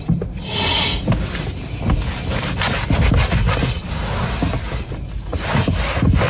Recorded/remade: recorded